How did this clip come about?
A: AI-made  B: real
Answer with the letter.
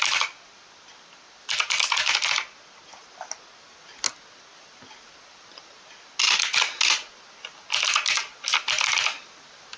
B